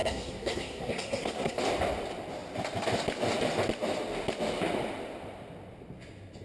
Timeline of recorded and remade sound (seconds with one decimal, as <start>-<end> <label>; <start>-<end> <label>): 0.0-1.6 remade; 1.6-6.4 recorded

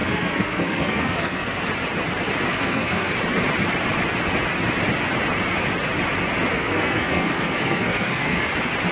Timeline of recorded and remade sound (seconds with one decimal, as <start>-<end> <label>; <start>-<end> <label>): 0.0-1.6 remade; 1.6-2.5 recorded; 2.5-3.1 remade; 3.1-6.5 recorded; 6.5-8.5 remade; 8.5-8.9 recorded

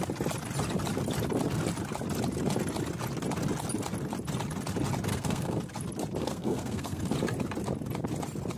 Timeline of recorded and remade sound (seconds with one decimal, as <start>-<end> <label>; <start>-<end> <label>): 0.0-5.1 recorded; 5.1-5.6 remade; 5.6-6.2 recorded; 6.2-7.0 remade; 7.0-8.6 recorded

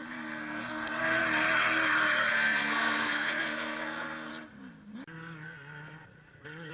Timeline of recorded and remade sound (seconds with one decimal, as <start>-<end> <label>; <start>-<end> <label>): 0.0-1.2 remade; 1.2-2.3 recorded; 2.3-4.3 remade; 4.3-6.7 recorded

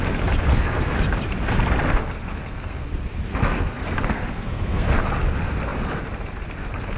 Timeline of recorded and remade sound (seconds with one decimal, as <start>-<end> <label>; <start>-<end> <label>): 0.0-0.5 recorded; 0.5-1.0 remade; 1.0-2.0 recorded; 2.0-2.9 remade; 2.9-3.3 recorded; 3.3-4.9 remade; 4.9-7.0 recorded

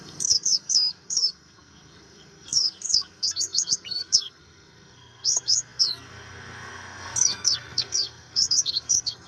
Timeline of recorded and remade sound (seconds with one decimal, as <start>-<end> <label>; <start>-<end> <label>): 0.0-9.3 remade

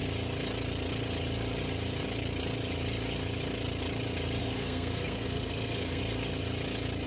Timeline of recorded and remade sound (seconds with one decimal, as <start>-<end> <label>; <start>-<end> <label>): 0.0-4.4 recorded; 4.4-6.0 remade; 6.0-7.1 recorded